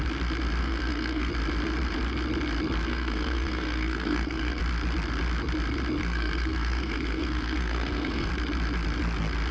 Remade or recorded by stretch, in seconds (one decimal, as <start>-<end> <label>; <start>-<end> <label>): 0.0-0.6 recorded; 0.6-1.3 remade; 1.3-2.9 recorded; 2.9-4.6 remade; 4.6-6.0 recorded; 6.0-8.3 remade; 8.3-9.5 recorded